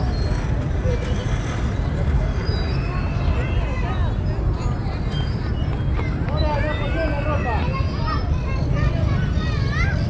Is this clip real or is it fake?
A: real